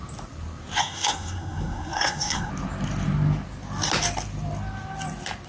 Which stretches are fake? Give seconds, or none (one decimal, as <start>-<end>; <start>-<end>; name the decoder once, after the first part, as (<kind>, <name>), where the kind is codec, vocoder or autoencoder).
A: 0.8-2.5 (codec, SNAC)